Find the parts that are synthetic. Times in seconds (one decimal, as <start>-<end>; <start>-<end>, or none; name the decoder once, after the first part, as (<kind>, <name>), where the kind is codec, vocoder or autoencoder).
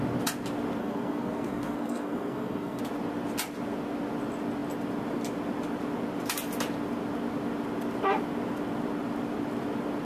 0.8-2.8 (codec, SNAC)